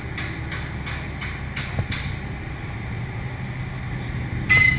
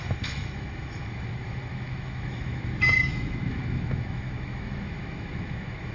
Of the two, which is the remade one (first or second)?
second